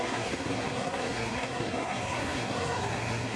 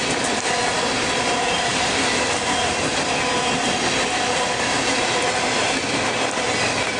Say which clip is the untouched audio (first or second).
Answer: second